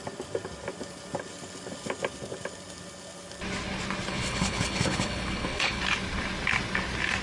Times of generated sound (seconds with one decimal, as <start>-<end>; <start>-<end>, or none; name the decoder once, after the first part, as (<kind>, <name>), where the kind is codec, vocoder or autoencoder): 4.1-5.8 (codec, HILCodec)